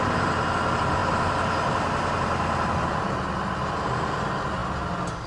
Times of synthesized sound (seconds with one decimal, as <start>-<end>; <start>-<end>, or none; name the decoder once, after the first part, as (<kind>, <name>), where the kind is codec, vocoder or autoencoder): none